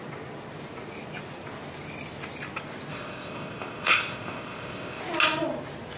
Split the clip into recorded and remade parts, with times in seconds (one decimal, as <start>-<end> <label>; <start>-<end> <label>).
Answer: 0.0-2.9 recorded; 2.9-5.0 remade; 5.0-6.0 recorded